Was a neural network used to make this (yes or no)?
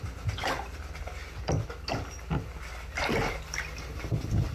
no